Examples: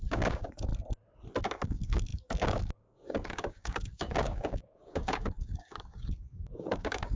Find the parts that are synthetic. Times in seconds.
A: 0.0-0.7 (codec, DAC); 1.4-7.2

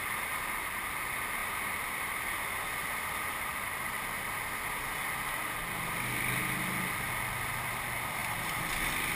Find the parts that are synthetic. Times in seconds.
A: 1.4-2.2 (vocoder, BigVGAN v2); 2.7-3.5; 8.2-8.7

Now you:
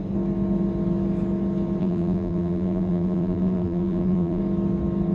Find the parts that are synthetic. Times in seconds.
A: 1.8-4.4 (vocoder, BigVGAN v2)

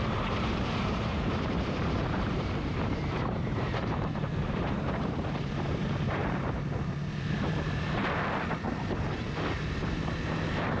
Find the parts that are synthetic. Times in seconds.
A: 0.0-8.0 (vocoder, BigVGAN v2); 9.6-10.8